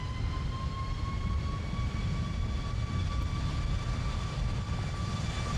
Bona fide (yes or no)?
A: yes